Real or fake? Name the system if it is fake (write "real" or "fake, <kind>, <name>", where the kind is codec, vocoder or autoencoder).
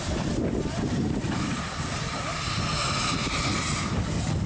real